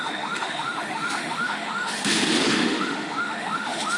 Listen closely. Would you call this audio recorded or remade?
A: remade